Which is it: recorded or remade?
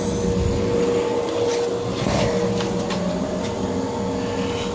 recorded